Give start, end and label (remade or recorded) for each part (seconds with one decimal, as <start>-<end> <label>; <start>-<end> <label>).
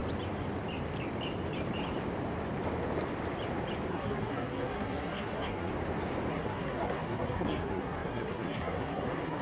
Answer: 0.0-3.9 recorded; 3.9-5.7 remade; 5.7-6.3 recorded; 6.3-9.4 remade